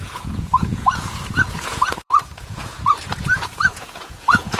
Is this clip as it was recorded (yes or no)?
no